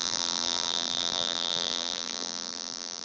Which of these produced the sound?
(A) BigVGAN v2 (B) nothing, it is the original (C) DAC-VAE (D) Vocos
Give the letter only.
A